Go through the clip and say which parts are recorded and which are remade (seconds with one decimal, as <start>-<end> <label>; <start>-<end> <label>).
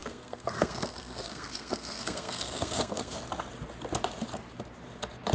0.0-3.2 remade; 3.2-5.3 recorded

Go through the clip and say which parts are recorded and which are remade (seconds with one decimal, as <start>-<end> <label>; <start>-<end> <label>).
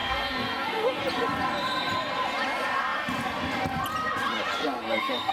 0.0-1.0 remade; 1.0-4.5 recorded; 4.5-5.3 remade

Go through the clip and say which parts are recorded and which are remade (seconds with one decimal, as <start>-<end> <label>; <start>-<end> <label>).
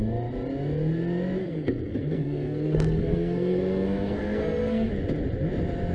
0.0-1.4 recorded; 1.4-4.9 remade; 4.9-5.9 recorded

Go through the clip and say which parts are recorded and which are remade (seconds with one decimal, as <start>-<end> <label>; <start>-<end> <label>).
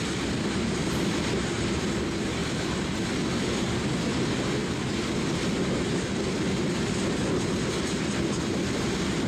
0.0-9.3 recorded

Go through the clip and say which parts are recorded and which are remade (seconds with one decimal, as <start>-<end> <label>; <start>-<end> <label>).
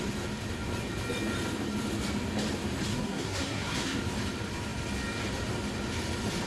0.0-2.9 recorded; 2.9-4.0 remade; 4.0-6.5 recorded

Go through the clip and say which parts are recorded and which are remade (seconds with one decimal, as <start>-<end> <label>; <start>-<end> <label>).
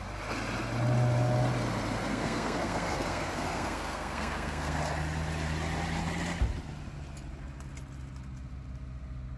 0.0-2.1 recorded; 2.1-4.8 remade; 4.8-9.4 recorded